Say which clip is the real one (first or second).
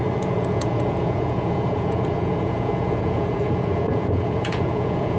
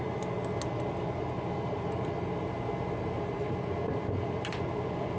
second